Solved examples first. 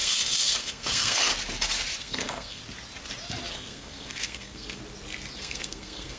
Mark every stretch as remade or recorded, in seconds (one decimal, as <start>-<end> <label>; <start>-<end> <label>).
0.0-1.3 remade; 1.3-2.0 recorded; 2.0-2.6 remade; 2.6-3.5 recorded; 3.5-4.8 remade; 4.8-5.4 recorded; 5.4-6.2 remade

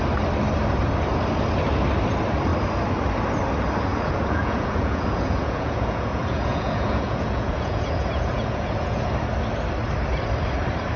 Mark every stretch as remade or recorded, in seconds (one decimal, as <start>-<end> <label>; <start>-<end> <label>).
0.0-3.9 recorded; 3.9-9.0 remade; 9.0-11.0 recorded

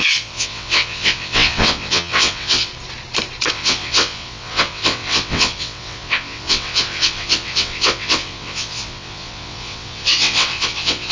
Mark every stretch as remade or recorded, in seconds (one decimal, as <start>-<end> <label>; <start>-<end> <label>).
0.0-2.7 remade; 2.7-3.5 recorded; 3.5-11.1 remade

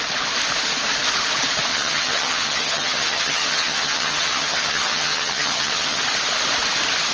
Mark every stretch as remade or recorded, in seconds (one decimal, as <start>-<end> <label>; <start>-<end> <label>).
0.0-1.7 recorded; 1.7-6.0 remade; 6.0-7.1 recorded

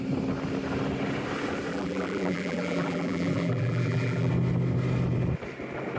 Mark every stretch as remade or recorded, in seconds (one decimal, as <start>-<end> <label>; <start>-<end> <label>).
0.0-1.7 recorded; 1.7-4.3 remade; 4.3-6.0 recorded

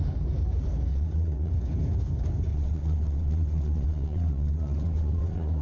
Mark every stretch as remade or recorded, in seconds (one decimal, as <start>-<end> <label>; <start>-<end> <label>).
0.0-0.9 recorded; 0.9-1.5 remade; 1.5-2.5 recorded; 2.5-5.6 remade

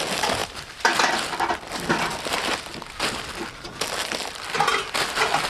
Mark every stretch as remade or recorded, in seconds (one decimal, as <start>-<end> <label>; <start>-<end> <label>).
0.0-5.5 recorded